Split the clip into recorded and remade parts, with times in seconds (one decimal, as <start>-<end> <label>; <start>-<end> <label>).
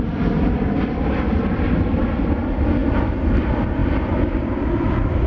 0.0-2.8 remade; 2.8-3.3 recorded; 3.3-5.3 remade